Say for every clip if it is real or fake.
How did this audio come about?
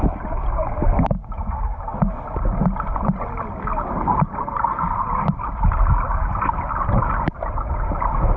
real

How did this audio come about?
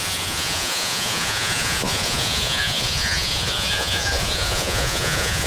fake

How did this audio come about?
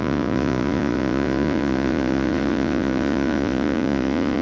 fake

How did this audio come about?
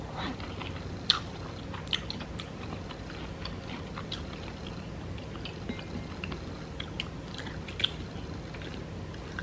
real